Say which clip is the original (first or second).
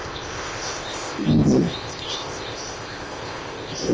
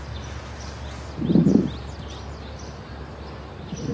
second